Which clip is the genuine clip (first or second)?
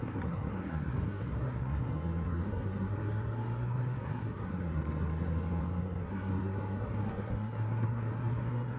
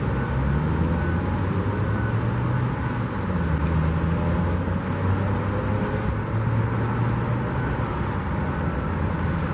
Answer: second